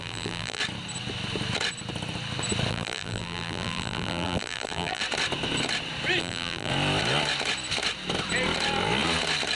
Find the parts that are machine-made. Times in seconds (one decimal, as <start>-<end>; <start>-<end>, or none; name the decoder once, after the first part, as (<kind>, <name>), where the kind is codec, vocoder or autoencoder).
0.0-0.6 (vocoder, BigVGAN v2); 2.7-5.0; 6.2-6.7